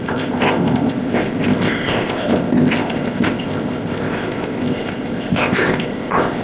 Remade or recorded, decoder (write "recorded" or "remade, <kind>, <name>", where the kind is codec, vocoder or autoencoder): remade, codec, ZipCodec